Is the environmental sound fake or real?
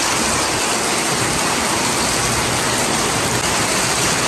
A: real